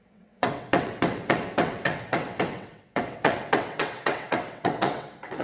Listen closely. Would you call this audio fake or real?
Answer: fake